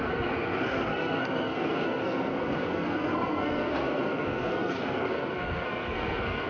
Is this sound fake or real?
fake